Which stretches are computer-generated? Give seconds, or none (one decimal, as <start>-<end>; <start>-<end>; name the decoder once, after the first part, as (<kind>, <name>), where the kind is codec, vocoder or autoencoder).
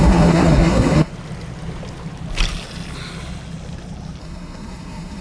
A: 0.0-1.1 (codec, SNAC); 4.2-5.2